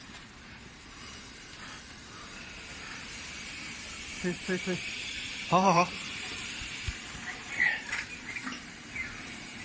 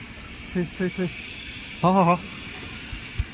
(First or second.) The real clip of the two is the second